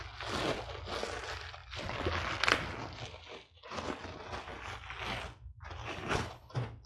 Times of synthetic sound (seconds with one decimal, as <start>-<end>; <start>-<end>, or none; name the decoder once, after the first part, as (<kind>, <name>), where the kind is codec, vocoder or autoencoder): 5.8-6.5 (codec, HILCodec)